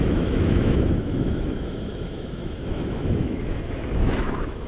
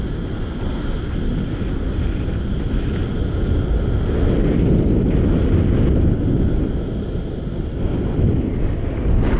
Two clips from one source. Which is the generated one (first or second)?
first